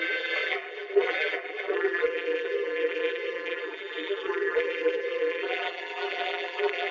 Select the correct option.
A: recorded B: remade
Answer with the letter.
B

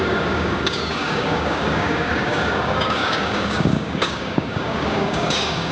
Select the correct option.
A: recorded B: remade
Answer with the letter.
B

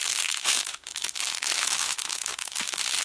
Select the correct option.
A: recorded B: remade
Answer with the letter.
B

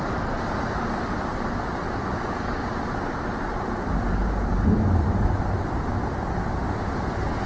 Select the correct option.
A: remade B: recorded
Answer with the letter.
B